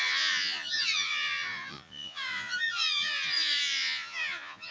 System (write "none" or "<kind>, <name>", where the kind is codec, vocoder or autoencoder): vocoder, Vocos